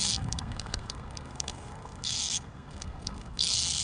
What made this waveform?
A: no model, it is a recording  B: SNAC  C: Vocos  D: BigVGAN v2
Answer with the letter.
B